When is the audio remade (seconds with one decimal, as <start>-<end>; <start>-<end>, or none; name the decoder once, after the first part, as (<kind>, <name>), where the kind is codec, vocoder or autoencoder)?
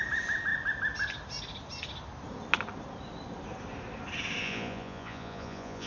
4.4-5.9 (vocoder, Vocos)